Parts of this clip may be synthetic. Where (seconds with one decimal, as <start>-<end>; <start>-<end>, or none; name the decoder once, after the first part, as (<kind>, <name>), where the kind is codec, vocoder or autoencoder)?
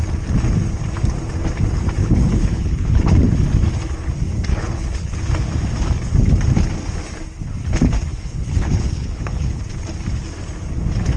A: 2.0-3.3 (codec, HILCodec); 4.5-5.2; 8.1-9.6